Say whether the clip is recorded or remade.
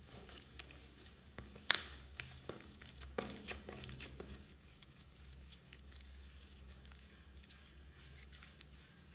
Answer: remade